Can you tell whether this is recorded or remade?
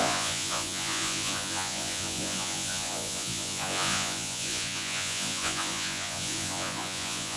remade